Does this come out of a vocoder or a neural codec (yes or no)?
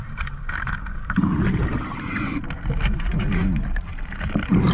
no